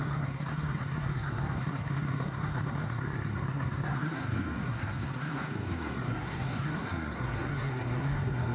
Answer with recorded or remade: remade